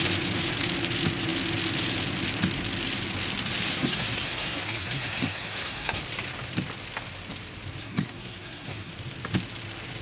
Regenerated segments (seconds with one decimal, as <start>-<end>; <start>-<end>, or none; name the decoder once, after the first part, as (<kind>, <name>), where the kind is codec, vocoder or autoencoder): 3.7-6.0 (codec, SNAC); 7.8-8.9

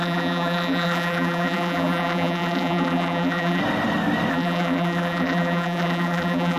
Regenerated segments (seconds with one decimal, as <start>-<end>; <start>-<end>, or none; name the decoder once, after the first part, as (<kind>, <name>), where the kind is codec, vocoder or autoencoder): 0.0-3.6 (vocoder, BigVGAN v2); 4.3-6.6

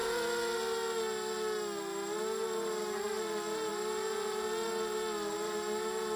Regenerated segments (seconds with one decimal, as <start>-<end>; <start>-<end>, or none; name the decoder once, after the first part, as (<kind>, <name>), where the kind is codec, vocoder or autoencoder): none

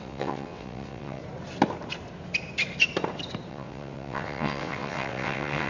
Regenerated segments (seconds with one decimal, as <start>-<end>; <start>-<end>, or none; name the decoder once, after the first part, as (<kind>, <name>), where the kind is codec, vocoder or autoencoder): 0.0-1.2 (vocoder, WaveNeXt); 3.5-5.7

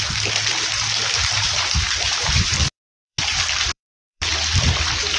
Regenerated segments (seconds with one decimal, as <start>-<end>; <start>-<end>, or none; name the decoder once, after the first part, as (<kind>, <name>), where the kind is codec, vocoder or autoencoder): 1.2-4.3 (vocoder, BigVGAN v2)

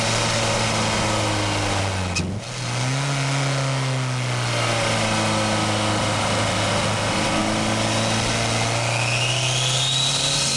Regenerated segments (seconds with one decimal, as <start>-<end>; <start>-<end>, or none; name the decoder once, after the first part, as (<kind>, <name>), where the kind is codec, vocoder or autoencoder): none